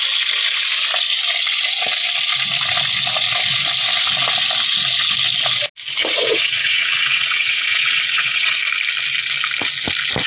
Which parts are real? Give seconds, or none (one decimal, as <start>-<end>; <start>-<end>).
0.0-6.0; 8.6-10.3